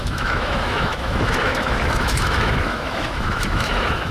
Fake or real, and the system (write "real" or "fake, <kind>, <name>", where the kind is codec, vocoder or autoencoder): fake, autoencoder, DAC-VAE